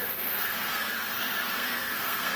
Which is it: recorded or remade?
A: remade